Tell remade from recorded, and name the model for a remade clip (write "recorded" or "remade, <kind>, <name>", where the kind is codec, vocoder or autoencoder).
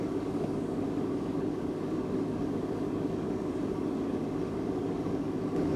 remade, codec, DAC